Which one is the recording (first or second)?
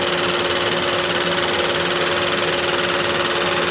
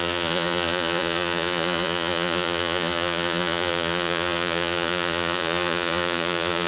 first